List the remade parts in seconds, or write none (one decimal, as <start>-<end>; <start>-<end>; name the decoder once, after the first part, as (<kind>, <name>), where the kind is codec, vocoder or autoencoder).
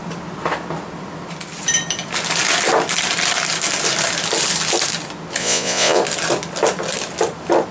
5.4-6.0 (vocoder, Vocos)